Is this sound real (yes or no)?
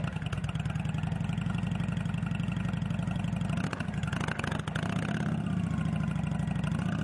yes